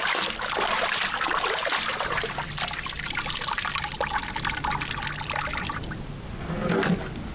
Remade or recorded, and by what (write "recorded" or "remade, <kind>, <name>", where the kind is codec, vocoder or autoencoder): recorded